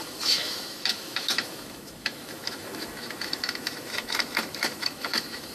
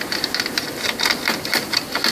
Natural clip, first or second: second